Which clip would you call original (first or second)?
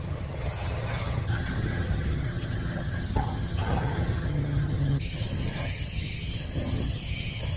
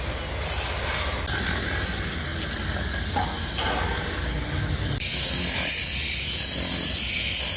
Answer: second